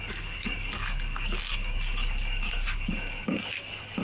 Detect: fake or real fake